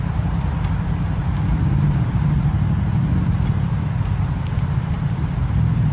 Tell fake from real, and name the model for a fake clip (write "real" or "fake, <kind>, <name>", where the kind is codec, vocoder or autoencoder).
real